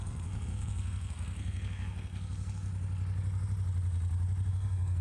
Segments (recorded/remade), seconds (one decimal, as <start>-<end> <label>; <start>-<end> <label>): 0.0-2.7 remade; 2.7-4.5 recorded; 4.5-5.0 remade